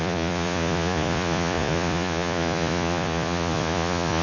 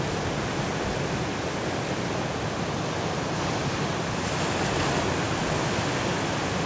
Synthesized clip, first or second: first